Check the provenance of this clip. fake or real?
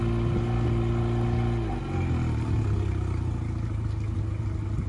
real